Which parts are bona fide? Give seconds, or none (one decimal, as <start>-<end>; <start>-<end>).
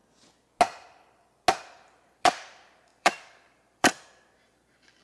0.0-1.6